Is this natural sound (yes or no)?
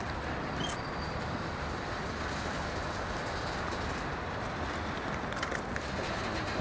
yes